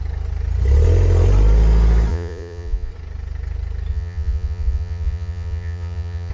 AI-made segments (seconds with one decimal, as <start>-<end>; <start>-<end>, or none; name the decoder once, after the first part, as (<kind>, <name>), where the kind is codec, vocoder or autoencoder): 2.1-2.9 (vocoder, Vocos); 3.9-6.3